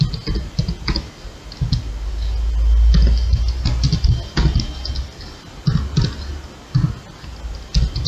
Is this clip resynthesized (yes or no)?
no